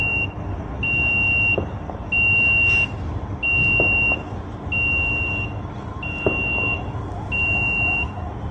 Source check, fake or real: real